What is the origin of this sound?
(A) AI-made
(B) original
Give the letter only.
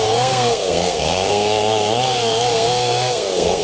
A